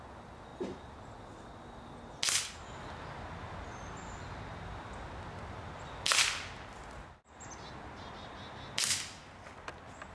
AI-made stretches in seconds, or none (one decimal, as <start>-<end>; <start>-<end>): none